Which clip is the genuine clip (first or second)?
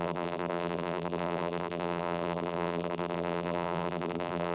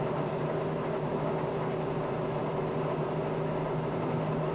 second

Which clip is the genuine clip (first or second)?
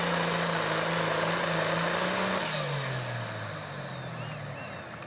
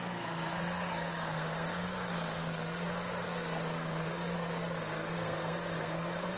first